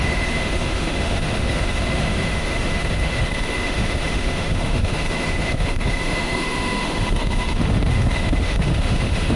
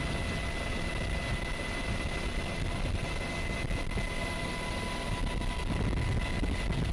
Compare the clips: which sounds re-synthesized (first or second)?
first